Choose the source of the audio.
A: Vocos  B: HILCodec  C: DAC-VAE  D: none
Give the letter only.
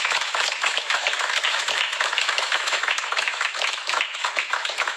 C